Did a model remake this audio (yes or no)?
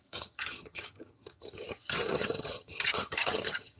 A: yes